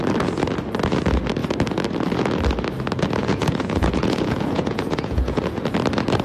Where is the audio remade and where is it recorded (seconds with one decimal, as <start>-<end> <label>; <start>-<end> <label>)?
0.0-3.2 recorded; 3.2-5.4 remade; 5.4-6.2 recorded